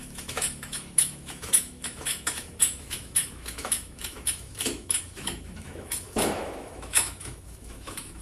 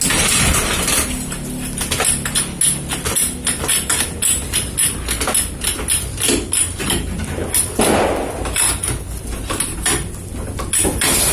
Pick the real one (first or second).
second